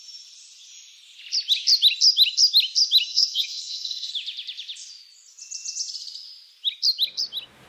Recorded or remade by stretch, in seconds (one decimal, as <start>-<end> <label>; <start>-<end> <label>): 0.0-3.1 recorded; 3.1-4.1 remade; 4.1-7.7 recorded